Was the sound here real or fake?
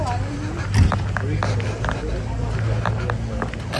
real